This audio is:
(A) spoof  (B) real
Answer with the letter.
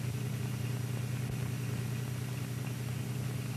B